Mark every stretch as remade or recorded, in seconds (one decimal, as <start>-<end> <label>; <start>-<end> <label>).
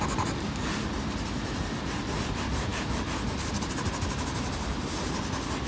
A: 0.0-5.7 recorded